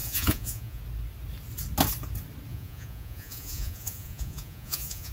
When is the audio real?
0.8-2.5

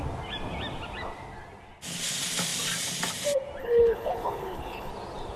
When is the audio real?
0.0-3.6; 4.9-5.4

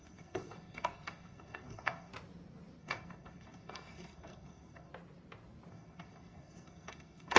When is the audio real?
2.1-2.8; 4.9-5.7

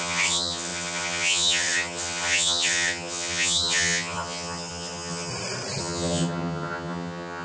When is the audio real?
5.3-5.8

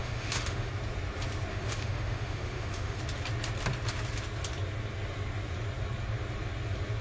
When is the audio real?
0.7-1.5; 3.0-7.0

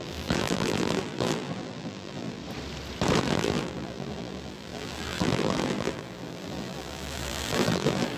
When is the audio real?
2.4-3.2

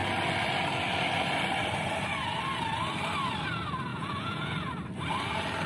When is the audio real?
0.0-3.9; 4.7-5.7